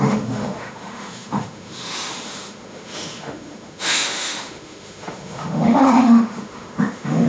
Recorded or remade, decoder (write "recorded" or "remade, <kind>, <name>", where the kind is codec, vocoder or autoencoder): remade, autoencoder, DAC-VAE